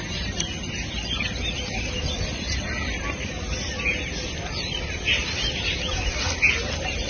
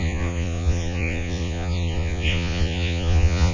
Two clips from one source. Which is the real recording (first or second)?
first